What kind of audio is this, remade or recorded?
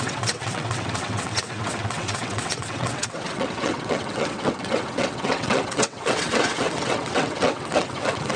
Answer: remade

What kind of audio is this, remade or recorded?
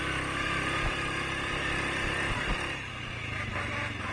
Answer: recorded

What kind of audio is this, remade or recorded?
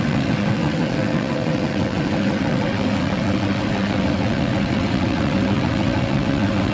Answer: remade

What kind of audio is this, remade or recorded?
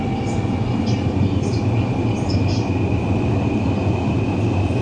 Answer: recorded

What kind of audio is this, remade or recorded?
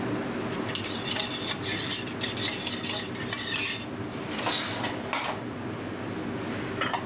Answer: recorded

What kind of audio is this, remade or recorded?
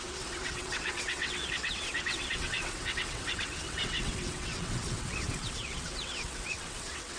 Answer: remade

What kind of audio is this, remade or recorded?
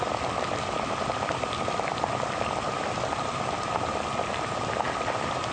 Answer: recorded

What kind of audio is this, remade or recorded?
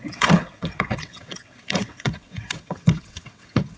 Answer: remade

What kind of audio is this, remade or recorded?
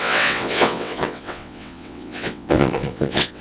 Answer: remade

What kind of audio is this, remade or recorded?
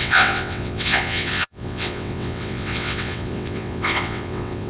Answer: remade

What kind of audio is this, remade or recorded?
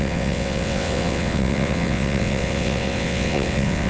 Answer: remade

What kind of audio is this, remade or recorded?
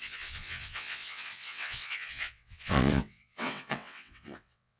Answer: remade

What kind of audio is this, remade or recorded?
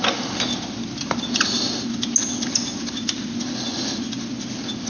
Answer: recorded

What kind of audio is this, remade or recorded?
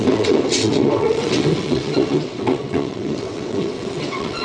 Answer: remade